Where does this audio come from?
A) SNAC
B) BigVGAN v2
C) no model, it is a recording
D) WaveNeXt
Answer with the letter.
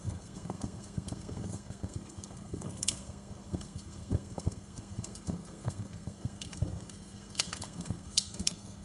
A